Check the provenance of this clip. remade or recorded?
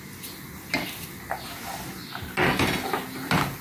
recorded